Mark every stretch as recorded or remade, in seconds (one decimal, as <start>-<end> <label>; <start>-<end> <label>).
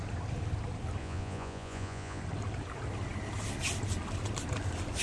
0.0-1.0 recorded; 1.0-2.2 remade; 2.2-5.0 recorded